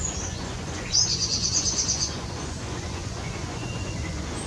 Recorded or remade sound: remade